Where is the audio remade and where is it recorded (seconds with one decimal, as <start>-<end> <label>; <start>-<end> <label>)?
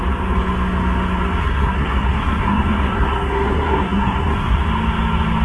0.0-1.4 recorded; 1.4-4.6 remade; 4.6-5.4 recorded